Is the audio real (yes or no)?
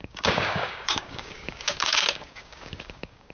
no